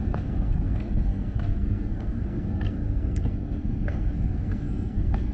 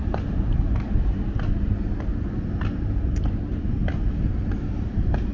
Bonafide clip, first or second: second